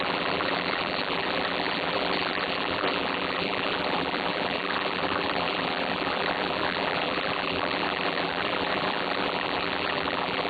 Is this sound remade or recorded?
remade